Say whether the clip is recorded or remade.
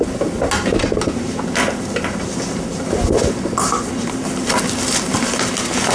recorded